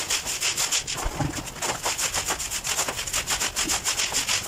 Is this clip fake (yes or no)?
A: no